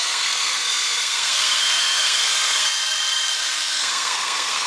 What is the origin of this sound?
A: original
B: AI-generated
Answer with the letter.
B